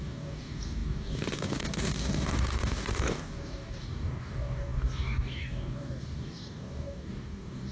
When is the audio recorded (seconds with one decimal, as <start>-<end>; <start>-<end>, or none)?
none